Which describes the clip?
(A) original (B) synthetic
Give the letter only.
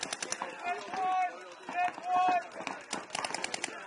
A